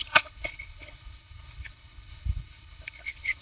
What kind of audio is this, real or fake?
fake